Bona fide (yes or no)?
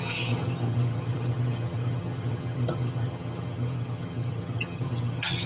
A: no